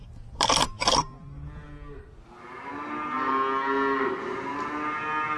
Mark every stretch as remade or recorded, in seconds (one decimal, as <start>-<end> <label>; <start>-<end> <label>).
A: 0.0-5.4 recorded